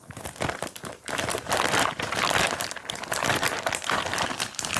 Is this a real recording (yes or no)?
yes